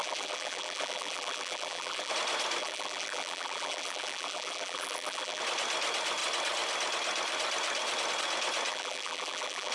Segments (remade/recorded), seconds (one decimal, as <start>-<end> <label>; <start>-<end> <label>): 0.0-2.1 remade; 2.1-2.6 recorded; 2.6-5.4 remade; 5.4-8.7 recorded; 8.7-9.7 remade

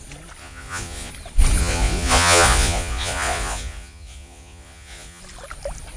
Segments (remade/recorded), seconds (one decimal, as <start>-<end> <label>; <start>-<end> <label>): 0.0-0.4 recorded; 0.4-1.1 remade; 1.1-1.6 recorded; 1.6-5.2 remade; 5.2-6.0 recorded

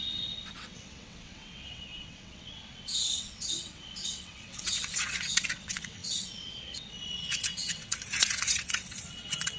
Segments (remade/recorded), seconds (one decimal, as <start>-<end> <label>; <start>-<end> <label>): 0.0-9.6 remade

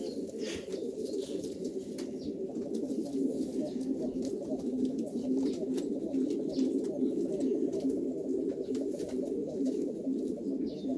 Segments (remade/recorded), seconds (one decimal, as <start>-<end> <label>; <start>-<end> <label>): 0.0-9.4 recorded; 9.4-10.4 remade; 10.4-11.0 recorded

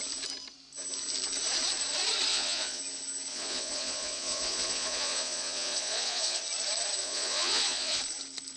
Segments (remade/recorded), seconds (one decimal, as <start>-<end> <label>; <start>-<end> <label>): 0.0-2.3 recorded; 2.3-2.8 remade; 2.8-3.3 recorded; 3.3-6.4 remade; 6.4-7.0 recorded; 7.0-8.0 remade; 8.0-8.6 recorded

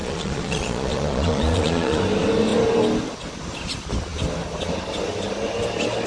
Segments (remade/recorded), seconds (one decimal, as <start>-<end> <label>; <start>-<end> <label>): 0.0-2.0 remade; 2.0-6.1 recorded